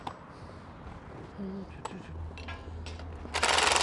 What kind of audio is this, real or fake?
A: real